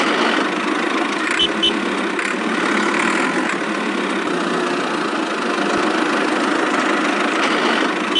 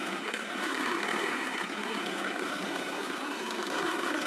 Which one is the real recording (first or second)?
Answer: first